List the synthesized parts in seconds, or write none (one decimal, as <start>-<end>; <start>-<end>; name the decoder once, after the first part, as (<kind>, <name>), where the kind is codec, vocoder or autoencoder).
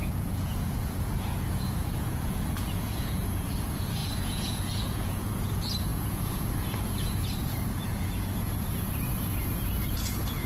0.0-10.5 (vocoder, Vocos)